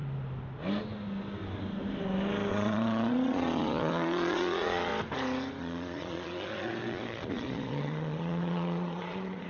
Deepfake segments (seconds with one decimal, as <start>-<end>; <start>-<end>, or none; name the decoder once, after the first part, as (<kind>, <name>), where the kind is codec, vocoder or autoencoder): 2.5-4.9 (vocoder, Vocos); 5.6-9.5